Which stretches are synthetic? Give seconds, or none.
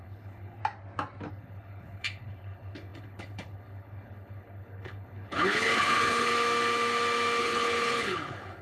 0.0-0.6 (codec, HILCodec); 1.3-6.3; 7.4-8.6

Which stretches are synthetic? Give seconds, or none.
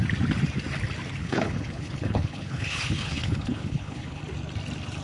1.2-4.2 (codec, HILCodec)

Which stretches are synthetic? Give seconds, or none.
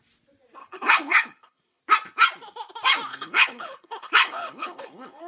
0.6-1.8 (codec, HILCodec); 3.1-5.3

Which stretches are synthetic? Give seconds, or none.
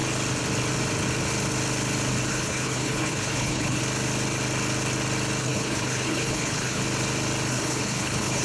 2.3-3.8 (codec, HILCodec); 5.4-6.8; 7.5-8.4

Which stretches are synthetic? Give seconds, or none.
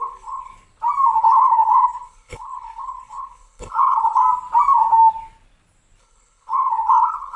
0.0-0.5 (codec, HILCodec); 1.2-4.2; 6.0-7.4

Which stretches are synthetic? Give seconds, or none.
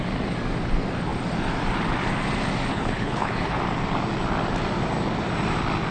2.7-3.6 (codec, HILCodec)